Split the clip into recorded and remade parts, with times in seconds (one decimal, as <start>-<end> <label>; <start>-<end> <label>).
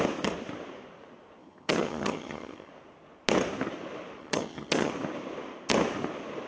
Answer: 0.0-1.4 recorded; 1.4-2.7 remade; 2.7-4.2 recorded; 4.2-4.9 remade; 4.9-6.5 recorded